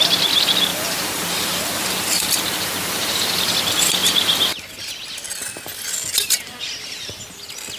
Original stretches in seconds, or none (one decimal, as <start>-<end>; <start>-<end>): 0.0-0.7; 3.5-7.8